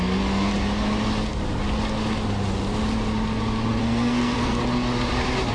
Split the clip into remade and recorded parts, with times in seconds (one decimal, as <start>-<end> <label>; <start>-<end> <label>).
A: 0.0-0.5 remade; 0.5-3.8 recorded; 3.8-4.6 remade; 4.6-5.5 recorded